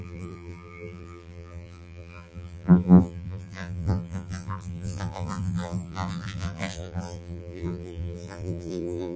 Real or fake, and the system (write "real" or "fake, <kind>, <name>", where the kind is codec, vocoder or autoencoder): fake, vocoder, BigVGAN v2